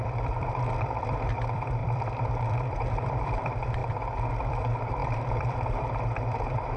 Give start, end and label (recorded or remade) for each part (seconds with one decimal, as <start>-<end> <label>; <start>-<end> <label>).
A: 0.0-6.8 remade